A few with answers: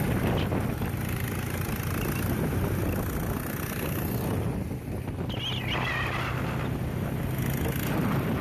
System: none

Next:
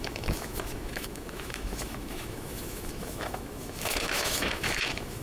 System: autoencoder, DAC-VAE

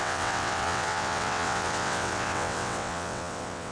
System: vocoder, WaveNeXt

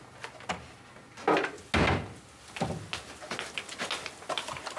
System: none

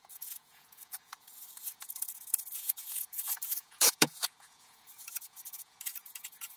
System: vocoder, Vocos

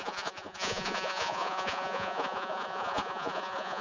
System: vocoder, Vocos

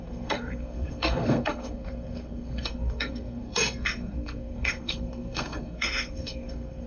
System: codec, SNAC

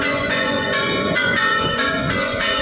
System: vocoder, Vocos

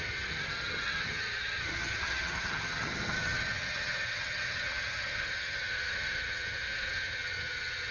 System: vocoder, HiFi-GAN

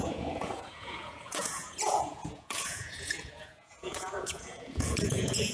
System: vocoder, Vocos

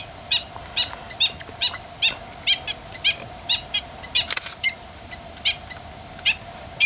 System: none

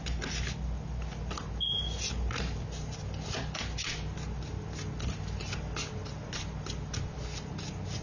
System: none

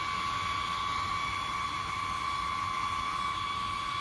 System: none